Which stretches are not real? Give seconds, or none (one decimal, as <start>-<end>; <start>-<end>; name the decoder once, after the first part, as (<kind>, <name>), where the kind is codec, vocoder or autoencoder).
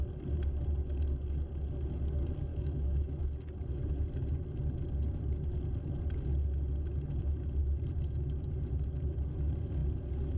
2.5-3.2 (autoencoder, DAC-VAE)